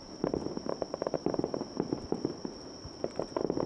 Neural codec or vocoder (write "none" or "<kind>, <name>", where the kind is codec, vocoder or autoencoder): none